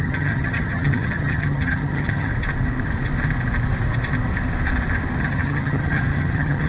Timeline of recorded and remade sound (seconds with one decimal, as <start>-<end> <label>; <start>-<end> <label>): 0.0-2.3 remade; 2.3-5.2 recorded; 5.2-6.7 remade